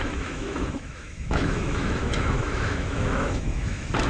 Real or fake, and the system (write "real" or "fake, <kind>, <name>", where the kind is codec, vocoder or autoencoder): fake, autoencoder, DAC-VAE